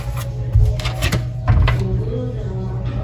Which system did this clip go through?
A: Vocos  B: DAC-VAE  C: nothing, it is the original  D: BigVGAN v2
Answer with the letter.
C